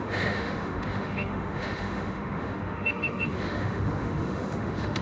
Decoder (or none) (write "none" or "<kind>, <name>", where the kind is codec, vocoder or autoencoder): autoencoder, DAC-VAE